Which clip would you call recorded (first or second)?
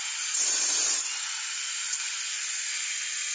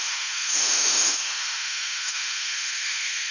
first